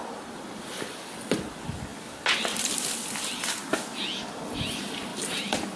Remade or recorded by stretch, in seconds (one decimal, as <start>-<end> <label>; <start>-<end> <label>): 0.0-1.9 remade; 1.9-2.5 recorded; 2.5-3.6 remade; 3.6-4.3 recorded; 4.3-5.8 remade